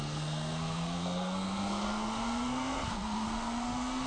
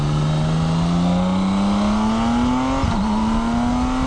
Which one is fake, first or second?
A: first